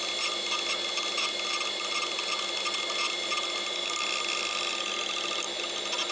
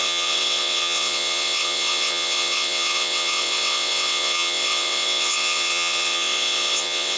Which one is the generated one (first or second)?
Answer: second